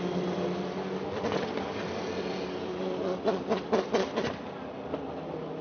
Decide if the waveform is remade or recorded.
recorded